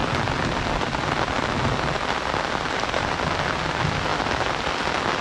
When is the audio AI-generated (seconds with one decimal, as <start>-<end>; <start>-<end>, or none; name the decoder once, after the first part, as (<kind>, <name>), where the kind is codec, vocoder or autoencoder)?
none